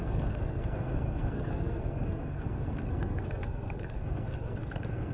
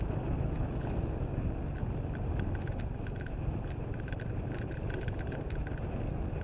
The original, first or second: second